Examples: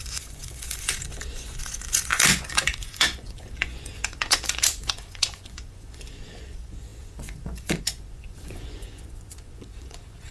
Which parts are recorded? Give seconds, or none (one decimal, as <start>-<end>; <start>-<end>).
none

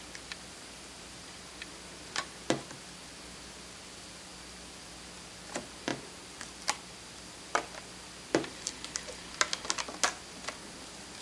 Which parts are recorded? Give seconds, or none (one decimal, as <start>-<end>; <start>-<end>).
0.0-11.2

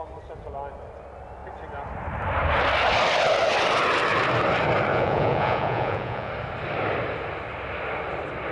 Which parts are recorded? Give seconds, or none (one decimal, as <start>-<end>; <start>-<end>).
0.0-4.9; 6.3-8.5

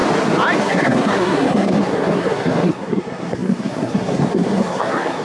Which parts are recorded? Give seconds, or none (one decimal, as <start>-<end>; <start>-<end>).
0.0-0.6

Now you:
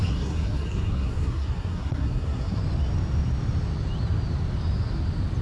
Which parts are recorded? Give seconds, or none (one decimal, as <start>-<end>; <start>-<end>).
2.6-5.4

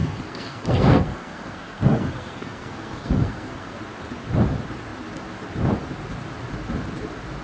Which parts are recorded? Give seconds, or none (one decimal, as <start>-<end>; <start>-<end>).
3.8-7.4

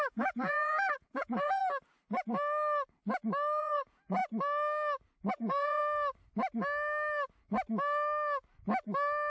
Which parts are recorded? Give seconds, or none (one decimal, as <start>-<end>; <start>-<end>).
1.6-3.6; 4.2-5.3; 5.8-9.3

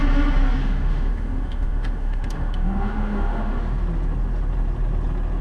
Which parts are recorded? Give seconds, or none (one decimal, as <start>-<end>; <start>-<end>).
0.0-0.6; 3.6-5.4